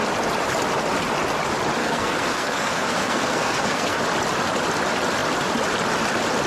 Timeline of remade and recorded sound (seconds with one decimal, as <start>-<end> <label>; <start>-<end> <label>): 0.0-1.8 recorded; 1.8-4.0 remade; 4.0-6.5 recorded